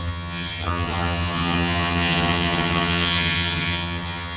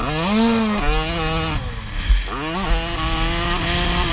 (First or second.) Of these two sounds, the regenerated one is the first